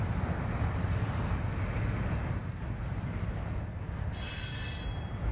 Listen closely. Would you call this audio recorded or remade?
recorded